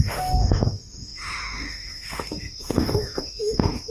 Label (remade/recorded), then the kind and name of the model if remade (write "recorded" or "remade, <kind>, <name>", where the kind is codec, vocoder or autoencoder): remade, autoencoder, DAC-VAE